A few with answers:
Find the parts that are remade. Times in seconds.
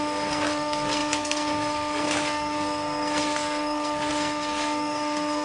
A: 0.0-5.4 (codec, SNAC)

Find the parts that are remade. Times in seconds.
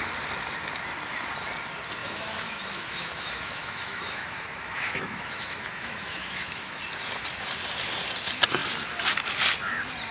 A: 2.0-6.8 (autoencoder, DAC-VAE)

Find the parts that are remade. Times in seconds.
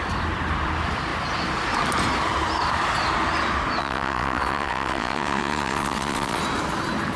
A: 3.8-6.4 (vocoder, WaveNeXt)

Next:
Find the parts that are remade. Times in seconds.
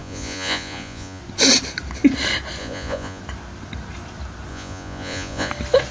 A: 0.0-1.2 (vocoder, Vocos); 2.6-3.2; 4.5-5.5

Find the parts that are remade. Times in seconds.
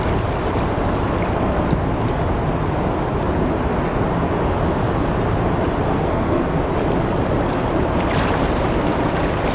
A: 5.9-6.6 (codec, SNAC)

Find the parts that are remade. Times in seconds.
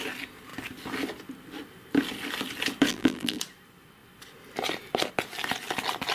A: 2.9-3.4 (vocoder, BigVGAN v2)